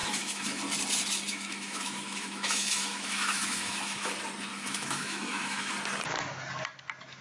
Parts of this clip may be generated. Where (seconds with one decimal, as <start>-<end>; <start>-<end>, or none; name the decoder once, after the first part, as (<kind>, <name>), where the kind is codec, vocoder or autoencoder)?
0.0-0.6 (autoencoder, DAC-VAE); 1.3-4.1; 4.5-5.7